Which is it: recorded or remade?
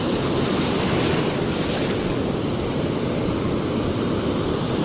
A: recorded